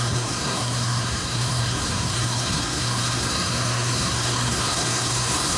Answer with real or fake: fake